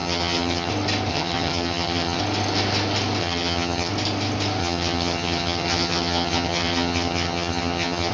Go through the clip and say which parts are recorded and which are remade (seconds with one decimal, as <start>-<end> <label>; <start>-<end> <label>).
0.0-0.7 remade; 0.7-1.1 recorded; 1.1-2.2 remade; 2.2-3.2 recorded; 3.2-3.9 remade; 3.9-4.6 recorded; 4.6-8.1 remade